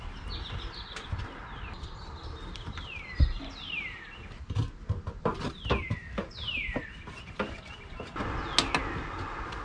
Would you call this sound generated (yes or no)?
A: no